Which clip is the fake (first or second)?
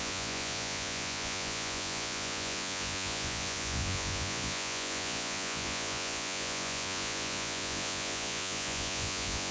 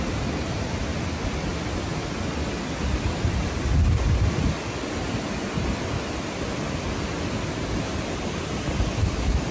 first